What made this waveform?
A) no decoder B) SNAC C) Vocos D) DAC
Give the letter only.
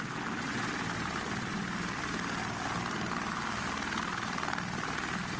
A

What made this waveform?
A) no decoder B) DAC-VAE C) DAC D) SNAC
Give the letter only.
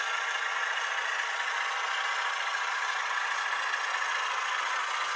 A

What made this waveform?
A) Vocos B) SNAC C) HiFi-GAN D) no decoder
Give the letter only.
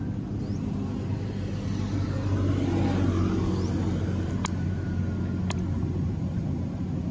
D